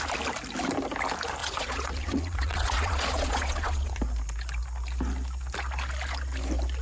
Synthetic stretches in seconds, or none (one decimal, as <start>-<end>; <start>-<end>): 1.4-4.0